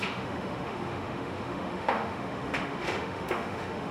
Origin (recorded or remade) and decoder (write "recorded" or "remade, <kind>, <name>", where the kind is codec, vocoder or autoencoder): remade, autoencoder, DAC-VAE